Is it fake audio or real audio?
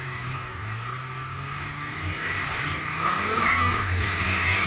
fake